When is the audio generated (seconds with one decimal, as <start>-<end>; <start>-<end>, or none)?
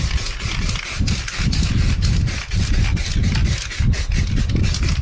none